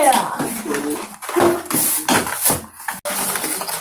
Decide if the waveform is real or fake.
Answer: real